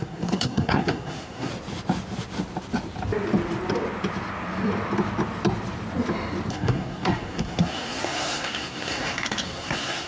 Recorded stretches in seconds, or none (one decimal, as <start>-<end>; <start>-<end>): 1.5-6.5